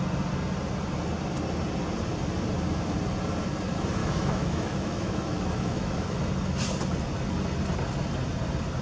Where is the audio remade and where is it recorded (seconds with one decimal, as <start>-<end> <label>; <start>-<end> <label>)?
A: 0.0-4.0 recorded; 4.0-6.2 remade; 6.2-8.8 recorded